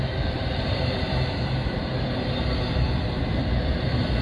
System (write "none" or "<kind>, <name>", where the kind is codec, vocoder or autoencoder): none